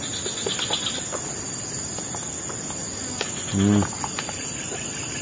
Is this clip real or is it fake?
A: real